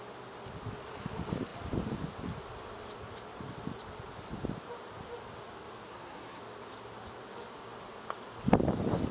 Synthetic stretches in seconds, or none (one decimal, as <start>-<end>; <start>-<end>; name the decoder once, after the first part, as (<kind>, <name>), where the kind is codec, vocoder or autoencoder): 5.9-6.4 (codec, SNAC)